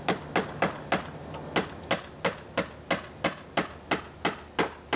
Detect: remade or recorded recorded